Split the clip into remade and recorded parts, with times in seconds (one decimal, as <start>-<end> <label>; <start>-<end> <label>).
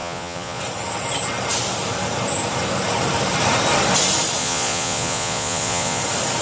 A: 0.0-0.6 remade; 0.6-4.4 recorded; 4.4-6.0 remade; 6.0-6.4 recorded